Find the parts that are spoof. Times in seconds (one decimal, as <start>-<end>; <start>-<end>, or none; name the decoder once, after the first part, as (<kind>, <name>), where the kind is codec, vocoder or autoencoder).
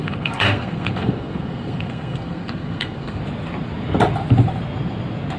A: 0.0-3.2 (codec, SNAC)